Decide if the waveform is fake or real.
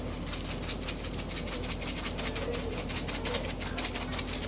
real